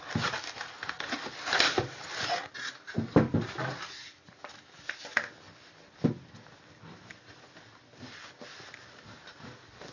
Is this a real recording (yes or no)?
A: yes